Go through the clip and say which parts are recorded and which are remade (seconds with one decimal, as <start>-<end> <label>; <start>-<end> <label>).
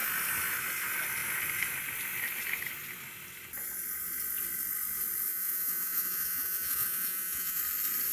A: 0.0-5.3 recorded; 5.3-7.6 remade; 7.6-8.1 recorded